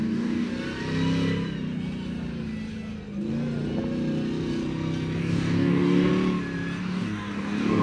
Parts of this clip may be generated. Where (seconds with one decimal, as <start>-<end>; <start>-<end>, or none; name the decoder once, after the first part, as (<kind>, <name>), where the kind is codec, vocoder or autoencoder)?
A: 0.0-0.5 (codec, DAC); 5.2-6.1; 6.8-7.8